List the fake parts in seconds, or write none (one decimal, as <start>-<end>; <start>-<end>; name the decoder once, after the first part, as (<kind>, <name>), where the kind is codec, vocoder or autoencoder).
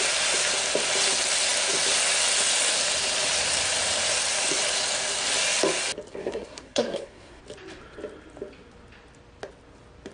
6.2-7.4 (codec, SNAC)